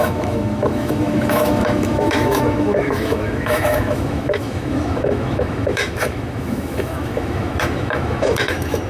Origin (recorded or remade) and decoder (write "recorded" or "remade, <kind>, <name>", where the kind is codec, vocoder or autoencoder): remade, autoencoder, DAC-VAE